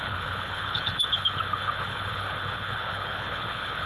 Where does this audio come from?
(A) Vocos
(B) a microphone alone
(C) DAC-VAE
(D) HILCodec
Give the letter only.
D